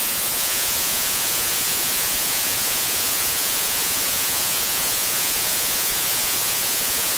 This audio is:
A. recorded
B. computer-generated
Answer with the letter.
B